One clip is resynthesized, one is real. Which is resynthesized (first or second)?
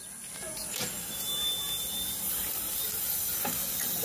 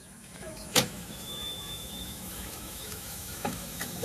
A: second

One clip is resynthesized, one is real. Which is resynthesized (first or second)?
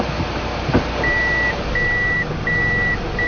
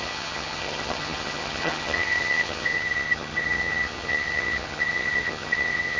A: second